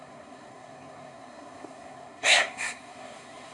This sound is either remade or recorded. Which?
remade